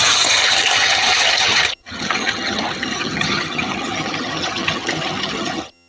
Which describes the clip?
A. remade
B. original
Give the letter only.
A